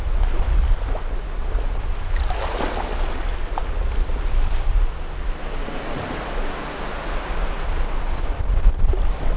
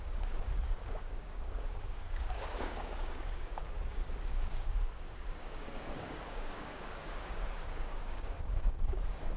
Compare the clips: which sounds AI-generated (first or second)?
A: second